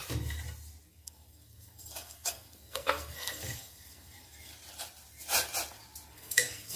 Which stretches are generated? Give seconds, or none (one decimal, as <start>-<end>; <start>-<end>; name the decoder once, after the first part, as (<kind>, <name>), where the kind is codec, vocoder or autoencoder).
0.9-4.5 (codec, SNAC); 6.1-6.8